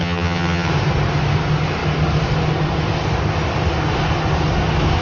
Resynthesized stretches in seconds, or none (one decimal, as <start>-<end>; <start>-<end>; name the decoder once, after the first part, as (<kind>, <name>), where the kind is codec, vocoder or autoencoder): 0.0-0.7 (vocoder, HiFi-GAN)

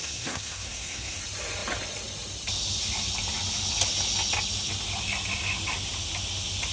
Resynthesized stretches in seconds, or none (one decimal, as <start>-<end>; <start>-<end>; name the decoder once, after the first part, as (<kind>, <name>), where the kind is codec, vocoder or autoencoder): 0.0-1.2 (codec, SNAC)

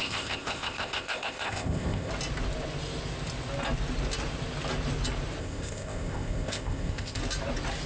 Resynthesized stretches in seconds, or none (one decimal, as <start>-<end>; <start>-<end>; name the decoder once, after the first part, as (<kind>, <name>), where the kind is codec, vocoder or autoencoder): 0.0-2.1 (codec, ZipCodec); 5.4-7.2